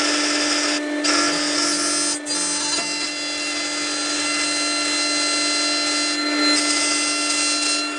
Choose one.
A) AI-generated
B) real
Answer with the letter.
B